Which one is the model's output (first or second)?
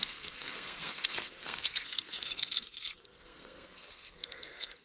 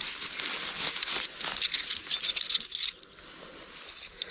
first